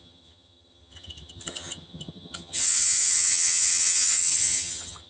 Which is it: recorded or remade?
remade